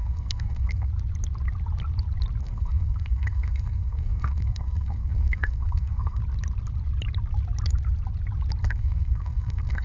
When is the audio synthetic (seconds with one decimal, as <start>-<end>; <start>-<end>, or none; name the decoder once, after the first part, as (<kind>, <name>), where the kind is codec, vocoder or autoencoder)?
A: 0.0-0.9 (codec, SNAC); 2.4-6.2; 8.6-9.8